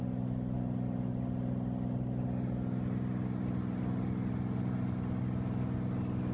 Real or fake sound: real